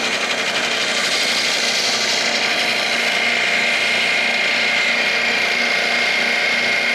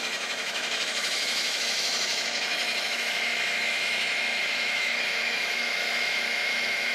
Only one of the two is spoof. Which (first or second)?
second